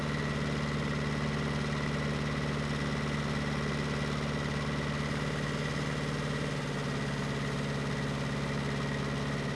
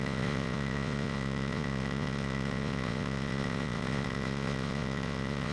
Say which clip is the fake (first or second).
second